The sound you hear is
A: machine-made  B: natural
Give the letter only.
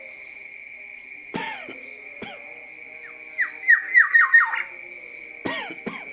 B